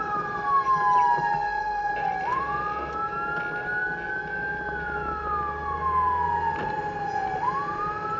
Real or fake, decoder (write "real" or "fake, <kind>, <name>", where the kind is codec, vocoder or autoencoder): real